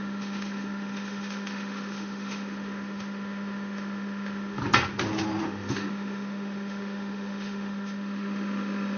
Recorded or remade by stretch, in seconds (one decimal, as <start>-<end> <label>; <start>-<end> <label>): 0.0-4.6 remade; 4.6-5.4 recorded; 5.4-9.0 remade